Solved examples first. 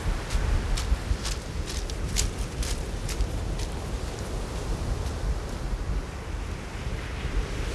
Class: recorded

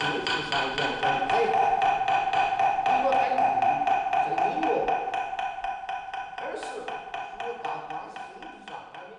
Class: recorded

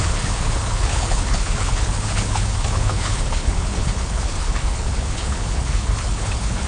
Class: remade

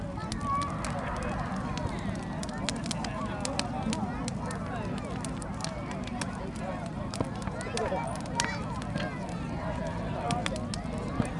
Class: recorded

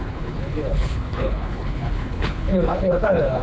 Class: remade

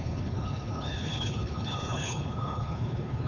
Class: remade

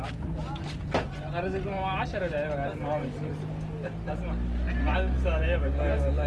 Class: recorded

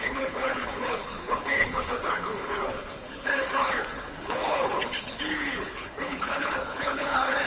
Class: remade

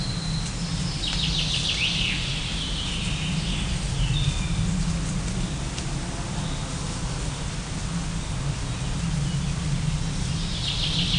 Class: recorded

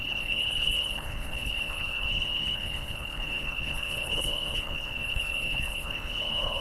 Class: remade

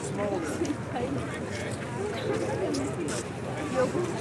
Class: recorded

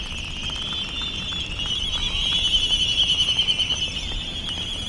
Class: recorded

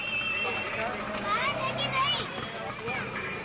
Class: recorded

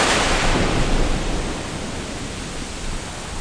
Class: recorded